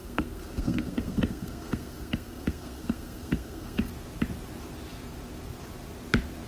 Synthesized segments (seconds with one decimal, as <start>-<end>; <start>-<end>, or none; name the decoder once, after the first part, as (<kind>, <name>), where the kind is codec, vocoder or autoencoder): 0.0-3.9 (codec, SNAC)